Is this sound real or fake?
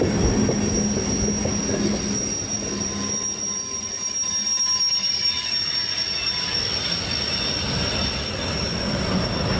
real